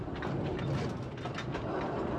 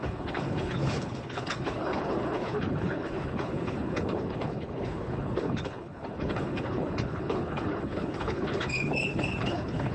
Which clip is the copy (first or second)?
second